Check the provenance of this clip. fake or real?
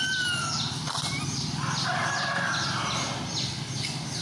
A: real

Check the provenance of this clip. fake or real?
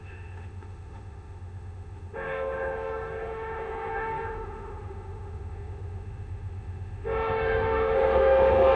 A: fake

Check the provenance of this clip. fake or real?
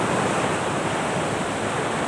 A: real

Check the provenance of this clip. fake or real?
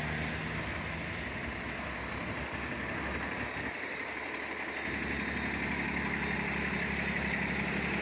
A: real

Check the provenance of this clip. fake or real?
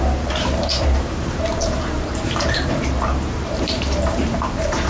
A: fake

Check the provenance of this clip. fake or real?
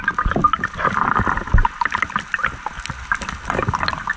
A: real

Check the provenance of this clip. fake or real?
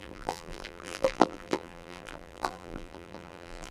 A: fake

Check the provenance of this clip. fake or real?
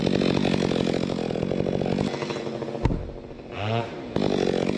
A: real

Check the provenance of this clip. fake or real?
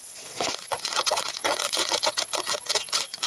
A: fake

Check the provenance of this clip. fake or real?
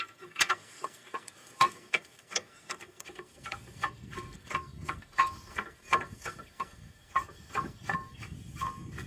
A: fake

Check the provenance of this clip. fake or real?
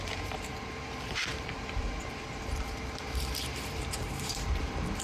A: fake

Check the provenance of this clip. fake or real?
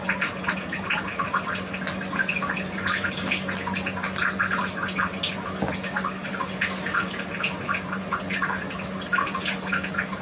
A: real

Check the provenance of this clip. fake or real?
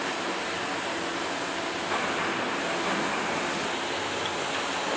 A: real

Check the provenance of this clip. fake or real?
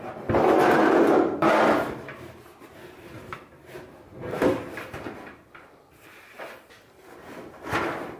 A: fake